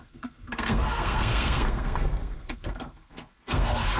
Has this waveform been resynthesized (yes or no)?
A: yes